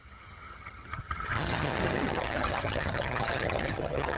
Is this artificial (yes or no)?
yes